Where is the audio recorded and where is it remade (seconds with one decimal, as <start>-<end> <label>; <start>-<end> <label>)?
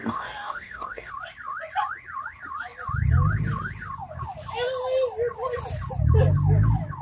0.0-1.1 remade; 1.1-7.0 recorded